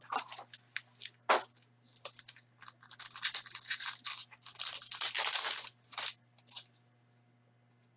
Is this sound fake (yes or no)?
no